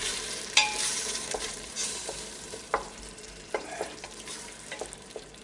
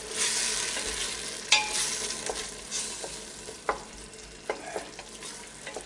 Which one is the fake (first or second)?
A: first